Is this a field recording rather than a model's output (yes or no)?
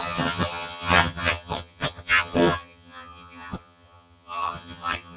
no